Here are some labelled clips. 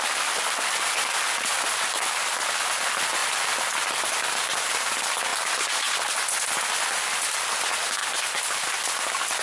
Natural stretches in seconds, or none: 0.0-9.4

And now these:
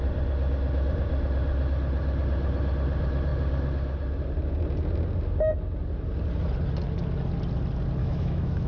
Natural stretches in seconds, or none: 0.0-8.0

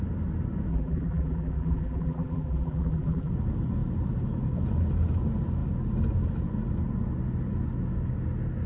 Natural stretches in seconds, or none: 0.0-0.7; 3.3-8.7